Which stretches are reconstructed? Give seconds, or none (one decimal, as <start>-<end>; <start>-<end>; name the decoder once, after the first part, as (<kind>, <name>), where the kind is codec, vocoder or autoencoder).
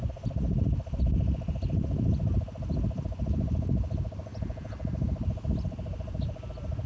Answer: none